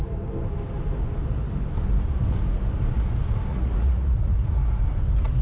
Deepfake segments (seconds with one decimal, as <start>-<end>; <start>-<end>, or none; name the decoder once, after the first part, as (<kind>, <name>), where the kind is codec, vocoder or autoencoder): 3.5-4.6 (vocoder, Vocos)